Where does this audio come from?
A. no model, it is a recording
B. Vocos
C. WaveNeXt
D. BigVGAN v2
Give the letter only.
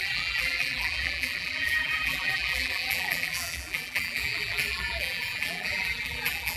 D